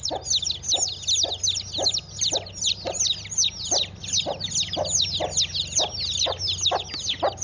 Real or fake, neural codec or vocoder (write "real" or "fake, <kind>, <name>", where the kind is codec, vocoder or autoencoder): real